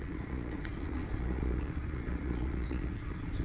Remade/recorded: remade